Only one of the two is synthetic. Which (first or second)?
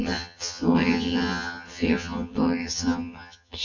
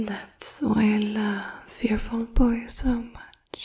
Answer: first